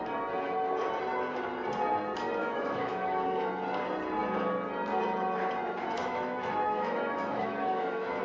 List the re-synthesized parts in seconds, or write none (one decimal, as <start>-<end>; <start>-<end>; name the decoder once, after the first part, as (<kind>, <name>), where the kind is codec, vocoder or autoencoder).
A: 2.4-3.5 (autoencoder, DAC-VAE); 6.0-8.2